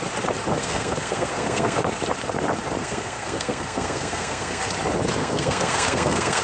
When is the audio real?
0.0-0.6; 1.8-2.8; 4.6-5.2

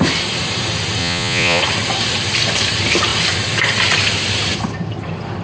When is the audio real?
0.0-1.0; 1.6-5.4

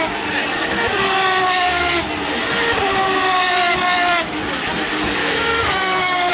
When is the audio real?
0.0-5.2

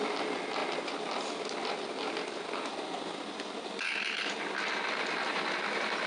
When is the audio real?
0.0-6.1

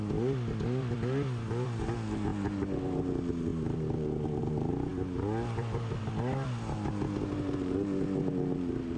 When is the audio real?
0.0-9.0

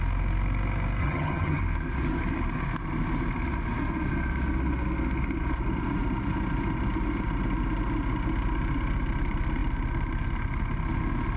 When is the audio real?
0.0-1.0; 1.6-11.4

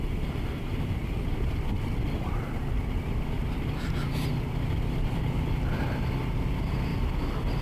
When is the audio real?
0.0-7.6